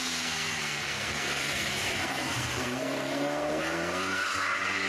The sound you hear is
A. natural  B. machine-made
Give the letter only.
B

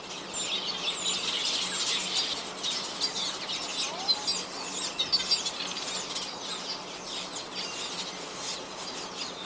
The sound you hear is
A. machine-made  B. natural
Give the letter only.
B